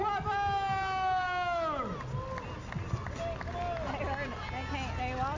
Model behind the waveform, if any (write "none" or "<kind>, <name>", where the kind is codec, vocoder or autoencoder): none